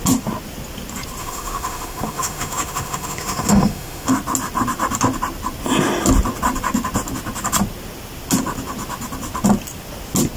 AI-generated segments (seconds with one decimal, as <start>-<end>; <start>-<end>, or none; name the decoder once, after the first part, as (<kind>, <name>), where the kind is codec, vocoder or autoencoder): 1.2-4.1 (autoencoder, DAC-VAE)